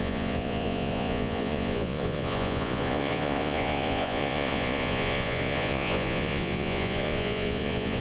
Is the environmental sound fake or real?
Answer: fake